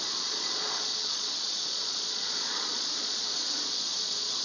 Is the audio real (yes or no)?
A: no